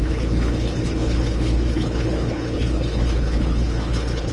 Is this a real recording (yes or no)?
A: no